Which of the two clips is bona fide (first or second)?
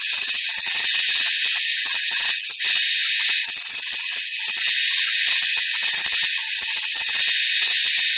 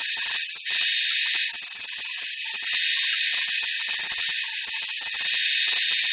second